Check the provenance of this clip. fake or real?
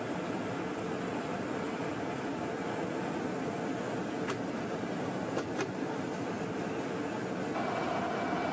real